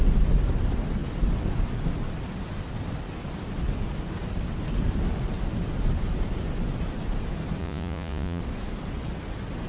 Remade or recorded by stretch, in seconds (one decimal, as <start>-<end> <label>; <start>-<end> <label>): 0.0-7.6 recorded; 7.6-8.4 remade; 8.4-9.7 recorded